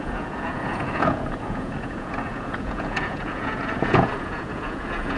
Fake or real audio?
fake